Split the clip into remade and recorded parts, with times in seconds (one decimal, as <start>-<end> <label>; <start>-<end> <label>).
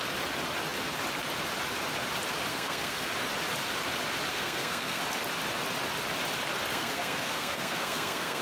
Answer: 0.0-2.5 recorded; 2.5-3.1 remade; 3.1-4.3 recorded; 4.3-5.0 remade; 5.0-6.7 recorded; 6.7-8.4 remade